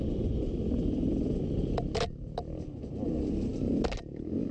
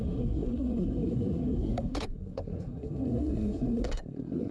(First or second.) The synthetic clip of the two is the second